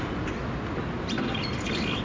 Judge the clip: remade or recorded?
recorded